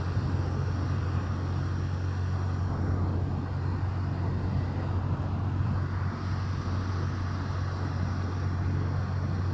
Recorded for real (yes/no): yes